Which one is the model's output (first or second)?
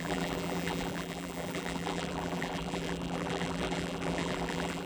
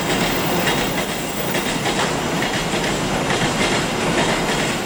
first